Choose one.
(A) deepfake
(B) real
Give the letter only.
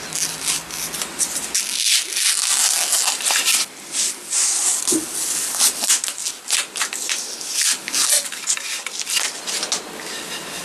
B